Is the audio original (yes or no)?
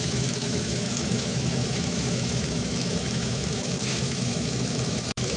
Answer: no